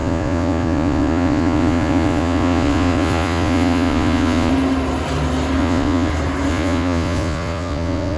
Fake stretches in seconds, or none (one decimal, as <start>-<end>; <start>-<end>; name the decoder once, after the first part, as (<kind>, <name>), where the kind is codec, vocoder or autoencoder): 0.0-4.5 (vocoder, Vocos); 5.6-6.1; 6.5-8.2